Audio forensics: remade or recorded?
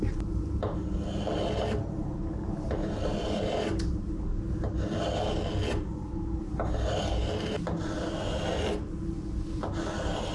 recorded